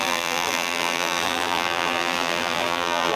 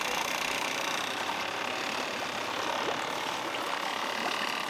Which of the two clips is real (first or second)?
second